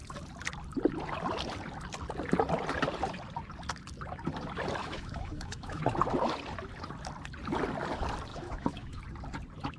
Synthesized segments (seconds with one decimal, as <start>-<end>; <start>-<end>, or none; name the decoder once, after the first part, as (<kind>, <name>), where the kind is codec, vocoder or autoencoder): 4.8-5.8 (autoencoder, DAC-VAE); 8.3-9.0

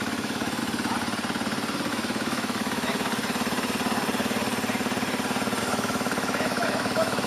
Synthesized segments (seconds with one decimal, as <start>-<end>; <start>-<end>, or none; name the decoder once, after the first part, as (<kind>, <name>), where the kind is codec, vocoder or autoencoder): 0.0-0.6 (autoencoder, DAC-VAE); 1.9-3.1; 5.6-7.3

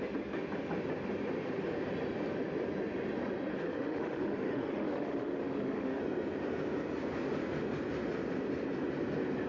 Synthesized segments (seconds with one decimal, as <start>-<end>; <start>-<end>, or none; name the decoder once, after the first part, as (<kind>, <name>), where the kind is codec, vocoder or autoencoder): 3.5-6.0 (autoencoder, DAC-VAE)

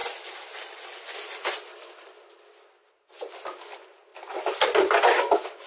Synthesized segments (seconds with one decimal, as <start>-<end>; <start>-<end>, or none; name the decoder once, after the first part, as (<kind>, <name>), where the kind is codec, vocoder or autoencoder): none

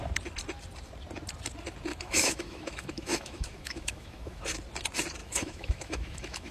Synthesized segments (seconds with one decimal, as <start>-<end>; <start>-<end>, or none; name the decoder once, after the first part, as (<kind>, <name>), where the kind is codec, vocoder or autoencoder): 1.9-4.4 (autoencoder, DAC-VAE); 5.2-6.5

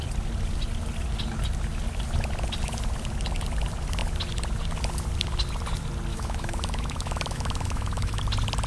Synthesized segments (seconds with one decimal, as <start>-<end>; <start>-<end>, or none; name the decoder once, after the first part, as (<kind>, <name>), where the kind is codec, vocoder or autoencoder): 6.1-8.2 (autoencoder, DAC-VAE)

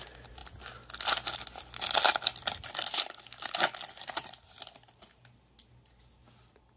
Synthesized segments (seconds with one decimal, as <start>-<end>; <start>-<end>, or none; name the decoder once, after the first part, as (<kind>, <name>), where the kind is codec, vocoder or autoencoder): none

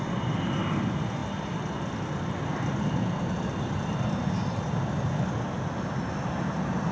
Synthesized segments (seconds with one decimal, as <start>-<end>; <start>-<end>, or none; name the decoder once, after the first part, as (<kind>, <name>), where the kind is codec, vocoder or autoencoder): none